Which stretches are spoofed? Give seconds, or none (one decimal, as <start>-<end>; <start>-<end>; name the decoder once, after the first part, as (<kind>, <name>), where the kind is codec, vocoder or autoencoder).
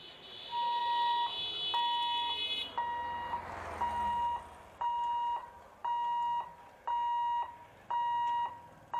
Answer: none